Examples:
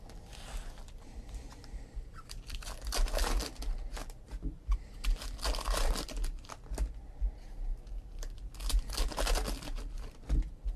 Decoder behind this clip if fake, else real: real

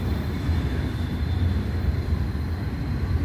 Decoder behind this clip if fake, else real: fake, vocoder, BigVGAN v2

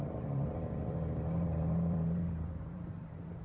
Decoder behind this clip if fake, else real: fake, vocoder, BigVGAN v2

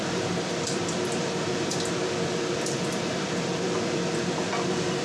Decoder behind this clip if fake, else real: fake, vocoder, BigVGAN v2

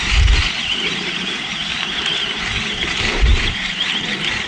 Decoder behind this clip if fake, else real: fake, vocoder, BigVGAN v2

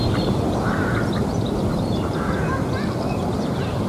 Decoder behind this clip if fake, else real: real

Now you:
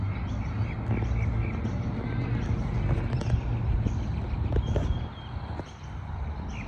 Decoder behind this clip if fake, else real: real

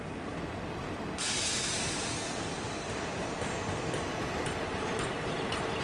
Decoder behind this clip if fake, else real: real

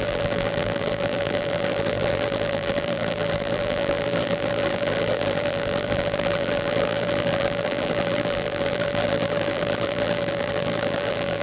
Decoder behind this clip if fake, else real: fake, vocoder, BigVGAN v2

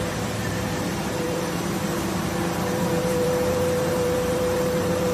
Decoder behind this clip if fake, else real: fake, vocoder, BigVGAN v2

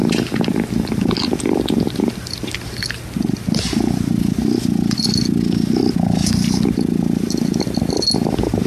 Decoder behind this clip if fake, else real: real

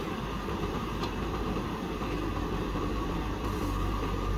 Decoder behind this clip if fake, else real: fake, vocoder, BigVGAN v2